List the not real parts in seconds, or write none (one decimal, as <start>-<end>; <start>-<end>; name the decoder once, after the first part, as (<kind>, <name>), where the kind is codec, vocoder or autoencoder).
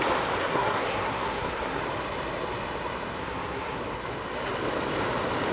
0.4-1.8 (codec, SNAC); 3.2-3.8